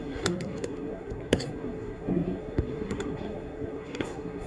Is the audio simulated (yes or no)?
yes